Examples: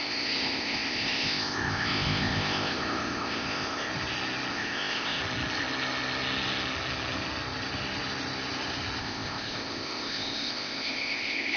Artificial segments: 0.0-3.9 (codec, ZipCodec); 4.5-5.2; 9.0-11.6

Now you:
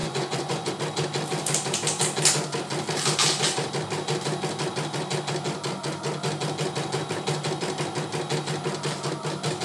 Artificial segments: 0.0-0.7 (vocoder, Vocos)

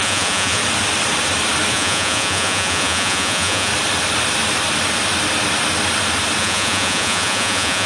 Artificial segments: 0.0-0.6 (vocoder, Vocos); 1.7-3.7; 6.4-7.9

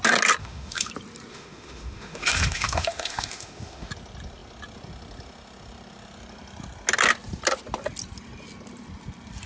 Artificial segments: 0.4-0.9 (autoencoder, DAC-VAE); 1.3-3.9

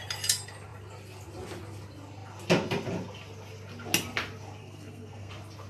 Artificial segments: 4.6-5.3 (codec, SNAC)

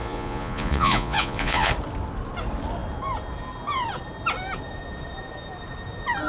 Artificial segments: 0.0-1.7 (vocoder, Vocos)